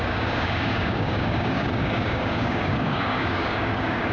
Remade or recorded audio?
remade